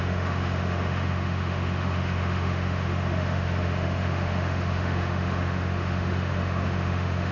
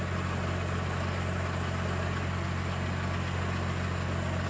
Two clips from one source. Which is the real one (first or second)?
second